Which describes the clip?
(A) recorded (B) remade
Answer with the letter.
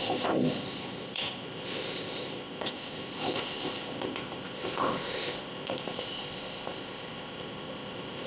B